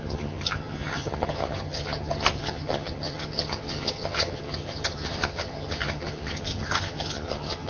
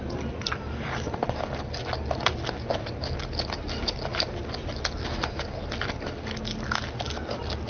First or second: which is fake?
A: first